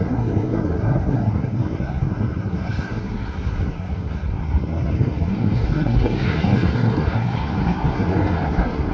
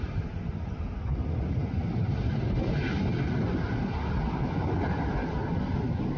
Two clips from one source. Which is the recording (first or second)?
second